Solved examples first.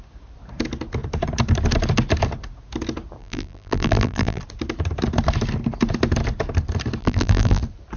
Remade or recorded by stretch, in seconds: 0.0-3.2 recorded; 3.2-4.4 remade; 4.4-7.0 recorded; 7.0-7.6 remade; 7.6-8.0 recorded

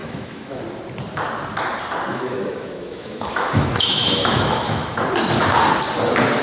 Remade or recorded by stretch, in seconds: 0.0-0.6 remade; 0.6-2.1 recorded; 2.1-4.9 remade; 4.9-6.4 recorded

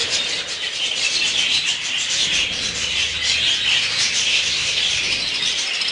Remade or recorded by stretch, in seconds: 0.0-4.3 recorded; 4.3-4.8 remade; 4.8-5.9 recorded

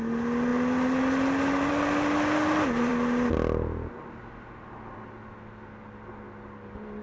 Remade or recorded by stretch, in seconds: 0.0-7.0 recorded

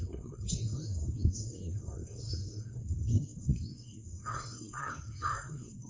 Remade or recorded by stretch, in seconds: 0.0-5.9 remade

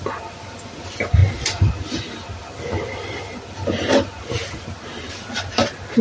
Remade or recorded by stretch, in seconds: 0.0-1.2 recorded; 1.2-1.7 remade; 1.7-6.0 recorded

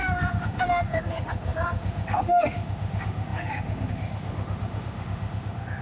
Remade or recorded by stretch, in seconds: 0.0-5.8 remade